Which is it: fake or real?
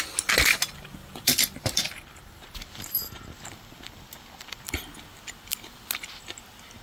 real